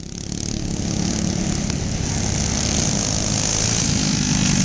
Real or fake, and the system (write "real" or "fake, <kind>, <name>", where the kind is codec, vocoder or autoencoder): real